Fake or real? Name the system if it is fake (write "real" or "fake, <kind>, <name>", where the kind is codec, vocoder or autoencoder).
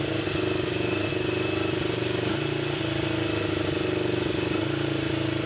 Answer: real